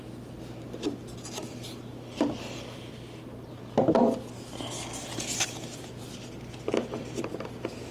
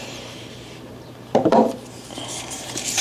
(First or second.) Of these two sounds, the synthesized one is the second